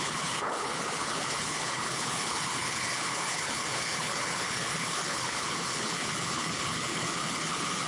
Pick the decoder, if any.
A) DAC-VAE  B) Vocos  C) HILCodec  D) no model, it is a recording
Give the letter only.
C